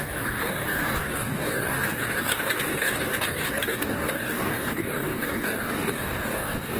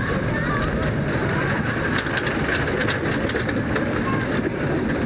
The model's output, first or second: first